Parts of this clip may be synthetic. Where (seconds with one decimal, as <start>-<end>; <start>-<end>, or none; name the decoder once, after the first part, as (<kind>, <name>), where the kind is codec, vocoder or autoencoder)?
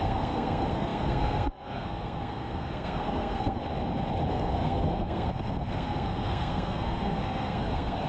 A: 0.0-3.6 (codec, SNAC); 4.3-8.1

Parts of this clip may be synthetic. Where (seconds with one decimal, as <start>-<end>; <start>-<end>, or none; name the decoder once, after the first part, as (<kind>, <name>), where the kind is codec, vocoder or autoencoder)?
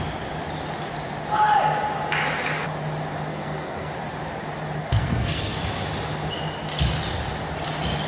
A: 3.3-3.9 (codec, SNAC); 4.8-5.6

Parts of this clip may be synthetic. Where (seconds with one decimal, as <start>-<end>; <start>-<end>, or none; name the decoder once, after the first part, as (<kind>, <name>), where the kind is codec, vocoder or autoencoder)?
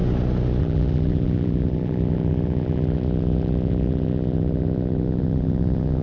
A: 0.6-6.0 (vocoder, BigVGAN v2)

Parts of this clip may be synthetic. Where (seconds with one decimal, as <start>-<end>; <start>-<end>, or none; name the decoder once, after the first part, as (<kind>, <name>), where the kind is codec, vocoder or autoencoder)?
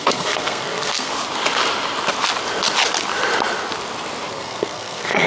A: 0.0-1.1 (codec, SNAC); 4.3-5.3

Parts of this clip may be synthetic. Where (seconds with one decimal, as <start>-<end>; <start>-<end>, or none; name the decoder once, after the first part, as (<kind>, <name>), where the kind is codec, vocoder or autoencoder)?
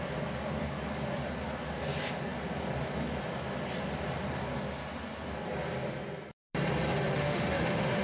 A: 7.1-8.0 (autoencoder, DAC-VAE)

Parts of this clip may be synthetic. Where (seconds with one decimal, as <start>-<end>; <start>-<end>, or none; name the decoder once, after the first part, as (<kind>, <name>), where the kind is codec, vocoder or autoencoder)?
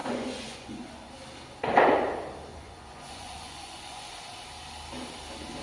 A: 0.0-1.1 (vocoder, Vocos); 2.5-4.1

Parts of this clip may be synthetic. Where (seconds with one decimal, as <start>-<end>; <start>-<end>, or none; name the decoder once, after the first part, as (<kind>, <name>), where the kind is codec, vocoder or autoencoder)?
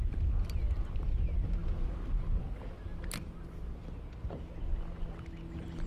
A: none